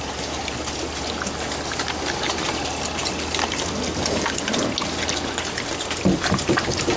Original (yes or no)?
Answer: yes